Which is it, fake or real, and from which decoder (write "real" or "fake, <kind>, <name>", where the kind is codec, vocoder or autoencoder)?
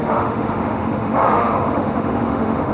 fake, autoencoder, DAC-VAE